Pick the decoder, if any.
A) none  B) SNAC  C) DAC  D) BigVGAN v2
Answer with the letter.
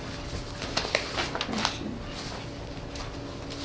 A